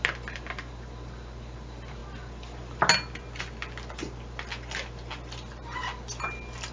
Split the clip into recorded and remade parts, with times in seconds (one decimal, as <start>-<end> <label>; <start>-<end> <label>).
0.0-2.0 recorded; 2.0-2.8 remade; 2.8-6.7 recorded